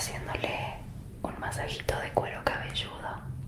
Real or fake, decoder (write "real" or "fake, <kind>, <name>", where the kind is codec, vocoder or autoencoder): fake, vocoder, BigVGAN v2